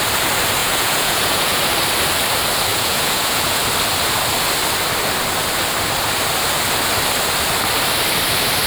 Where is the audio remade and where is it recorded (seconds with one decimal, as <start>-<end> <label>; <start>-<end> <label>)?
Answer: 0.0-0.6 recorded; 0.6-1.6 remade; 1.6-2.7 recorded; 2.7-3.6 remade; 3.6-8.7 recorded